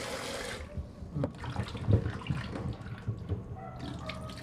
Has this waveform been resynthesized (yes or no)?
no